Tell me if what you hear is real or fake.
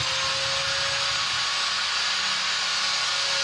real